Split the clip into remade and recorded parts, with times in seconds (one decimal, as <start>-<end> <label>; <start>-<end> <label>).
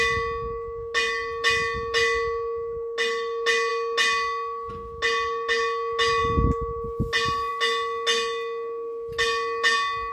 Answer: 0.0-10.1 recorded